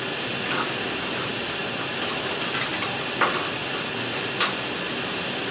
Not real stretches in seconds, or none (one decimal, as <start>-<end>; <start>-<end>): none